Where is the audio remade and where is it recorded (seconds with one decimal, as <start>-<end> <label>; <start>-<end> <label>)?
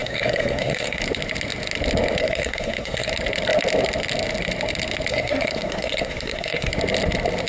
0.0-1.0 remade; 1.0-2.2 recorded; 2.2-3.1 remade; 3.1-5.1 recorded; 5.1-6.7 remade; 6.7-7.5 recorded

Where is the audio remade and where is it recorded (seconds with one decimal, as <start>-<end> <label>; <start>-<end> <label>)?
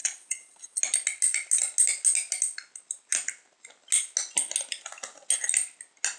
0.0-0.8 remade; 0.8-6.2 recorded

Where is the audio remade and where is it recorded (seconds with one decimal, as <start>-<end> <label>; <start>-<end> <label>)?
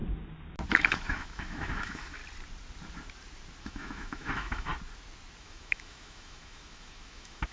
0.0-0.7 recorded; 0.7-2.2 remade; 2.2-3.6 recorded; 3.6-4.7 remade; 4.7-5.4 recorded; 5.4-7.5 remade